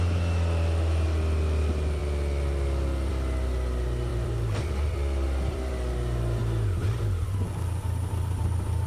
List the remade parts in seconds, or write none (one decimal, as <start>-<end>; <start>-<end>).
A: 4.1-5.7